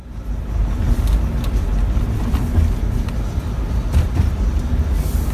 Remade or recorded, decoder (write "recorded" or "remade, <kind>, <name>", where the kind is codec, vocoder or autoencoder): recorded